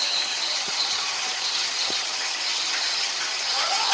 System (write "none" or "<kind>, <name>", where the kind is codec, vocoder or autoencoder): vocoder, HiFi-GAN